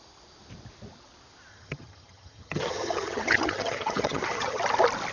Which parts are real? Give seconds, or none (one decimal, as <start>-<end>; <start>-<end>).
0.0-1.5; 4.6-5.1